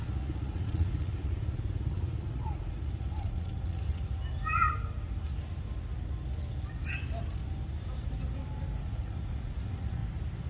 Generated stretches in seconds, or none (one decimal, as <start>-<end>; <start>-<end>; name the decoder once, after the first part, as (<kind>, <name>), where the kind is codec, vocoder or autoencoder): 0.0-4.1 (vocoder, Vocos); 8.8-10.0